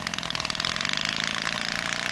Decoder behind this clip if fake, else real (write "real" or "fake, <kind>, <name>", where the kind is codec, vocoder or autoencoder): fake, vocoder, BigVGAN v2